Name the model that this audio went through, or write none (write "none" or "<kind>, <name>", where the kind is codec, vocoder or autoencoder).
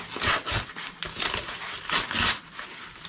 none